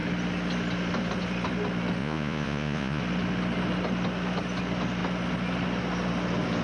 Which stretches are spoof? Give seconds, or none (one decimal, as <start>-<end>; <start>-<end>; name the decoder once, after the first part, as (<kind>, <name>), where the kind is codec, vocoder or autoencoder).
2.0-3.0 (vocoder, Vocos)